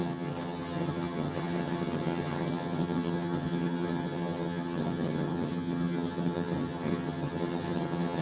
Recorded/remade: remade